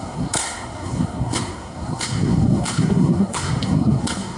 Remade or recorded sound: remade